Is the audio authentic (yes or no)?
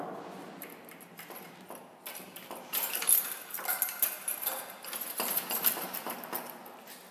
yes